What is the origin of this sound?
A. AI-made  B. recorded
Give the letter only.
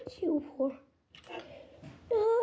B